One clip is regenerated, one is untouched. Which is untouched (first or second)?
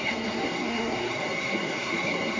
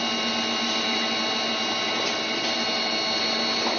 second